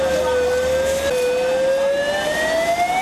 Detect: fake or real real